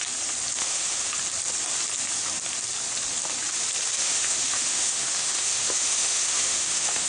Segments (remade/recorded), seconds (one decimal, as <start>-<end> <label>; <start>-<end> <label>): 0.0-0.6 recorded; 0.6-1.1 remade; 1.1-4.0 recorded; 4.0-7.1 remade